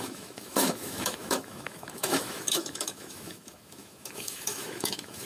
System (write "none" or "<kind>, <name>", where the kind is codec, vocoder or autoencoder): autoencoder, DAC-VAE